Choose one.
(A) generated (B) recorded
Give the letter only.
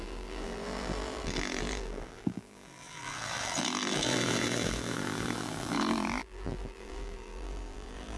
A